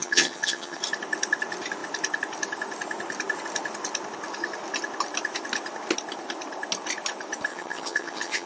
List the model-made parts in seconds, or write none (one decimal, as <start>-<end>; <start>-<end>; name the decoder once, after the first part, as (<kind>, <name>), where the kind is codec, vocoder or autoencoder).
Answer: 0.0-0.8 (vocoder, HiFi-GAN); 7.5-8.5